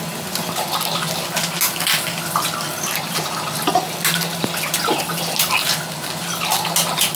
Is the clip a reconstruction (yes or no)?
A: no